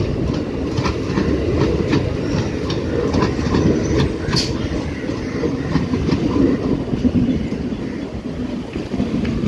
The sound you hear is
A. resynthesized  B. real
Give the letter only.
B